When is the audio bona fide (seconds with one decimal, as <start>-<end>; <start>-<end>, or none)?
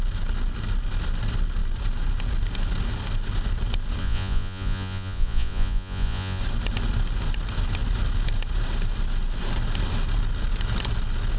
0.0-4.0; 6.4-11.4